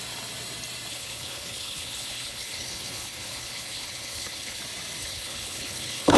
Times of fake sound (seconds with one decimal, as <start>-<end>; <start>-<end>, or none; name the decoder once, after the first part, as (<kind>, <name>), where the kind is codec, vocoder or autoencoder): 0.9-4.6 (codec, HILCodec); 5.0-6.2

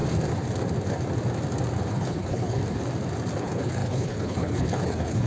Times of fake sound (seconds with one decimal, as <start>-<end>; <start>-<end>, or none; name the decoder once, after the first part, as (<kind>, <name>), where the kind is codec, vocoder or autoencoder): 1.9-2.6 (codec, HILCodec); 3.4-5.3